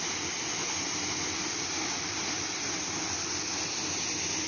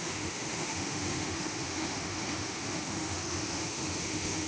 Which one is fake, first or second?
second